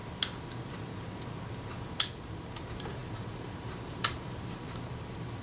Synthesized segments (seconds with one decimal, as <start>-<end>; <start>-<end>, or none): 3.0-5.0